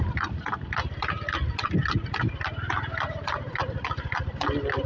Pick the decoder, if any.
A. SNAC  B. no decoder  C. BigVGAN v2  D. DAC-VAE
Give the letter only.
B